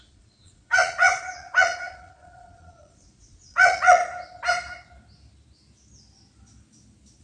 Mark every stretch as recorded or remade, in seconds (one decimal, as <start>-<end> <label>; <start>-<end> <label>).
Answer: 0.0-4.0 remade; 4.0-7.2 recorded